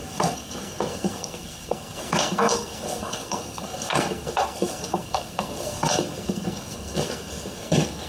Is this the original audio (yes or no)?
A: no